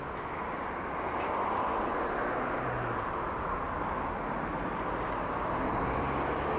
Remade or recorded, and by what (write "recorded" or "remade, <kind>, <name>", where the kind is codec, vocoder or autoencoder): recorded